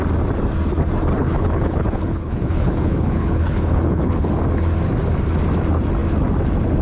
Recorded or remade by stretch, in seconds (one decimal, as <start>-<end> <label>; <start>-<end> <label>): 0.0-1.1 recorded; 1.1-4.4 remade; 4.4-6.8 recorded

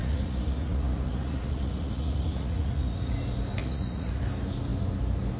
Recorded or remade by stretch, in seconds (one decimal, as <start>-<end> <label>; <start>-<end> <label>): 0.0-3.1 remade; 3.1-3.6 recorded; 3.6-4.2 remade; 4.2-5.4 recorded

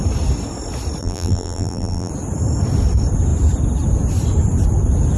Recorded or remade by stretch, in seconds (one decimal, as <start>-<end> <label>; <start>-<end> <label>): 0.0-1.0 recorded; 1.0-2.1 remade; 2.1-5.2 recorded

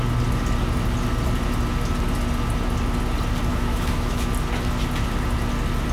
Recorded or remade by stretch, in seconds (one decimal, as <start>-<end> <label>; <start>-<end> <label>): 0.0-3.5 recorded; 3.5-4.3 remade; 4.3-5.9 recorded

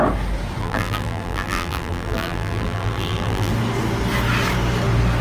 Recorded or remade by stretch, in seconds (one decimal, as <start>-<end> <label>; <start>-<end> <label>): 0.0-0.6 recorded; 0.6-3.5 remade; 3.5-5.2 recorded

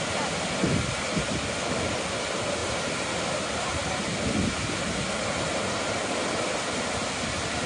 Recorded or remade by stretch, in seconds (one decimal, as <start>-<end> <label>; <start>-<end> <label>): 0.0-2.6 recorded; 2.6-3.2 remade; 3.2-7.7 recorded

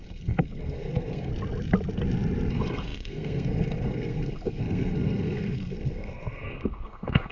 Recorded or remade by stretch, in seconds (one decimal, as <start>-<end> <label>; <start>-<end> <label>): 0.0-1.3 remade; 1.3-2.5 recorded; 2.5-7.3 remade

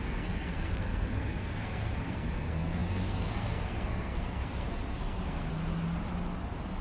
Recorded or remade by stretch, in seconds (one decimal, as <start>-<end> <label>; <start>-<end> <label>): 0.0-5.5 remade; 5.5-6.8 recorded